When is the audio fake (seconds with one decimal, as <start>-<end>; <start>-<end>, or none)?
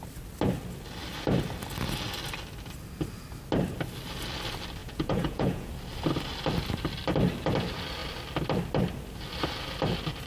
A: 4.8-5.7